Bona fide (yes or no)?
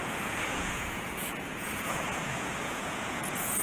no